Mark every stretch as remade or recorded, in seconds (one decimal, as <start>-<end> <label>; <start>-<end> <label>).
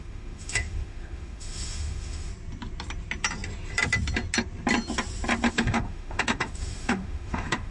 0.0-2.3 remade; 2.3-5.5 recorded; 5.5-7.7 remade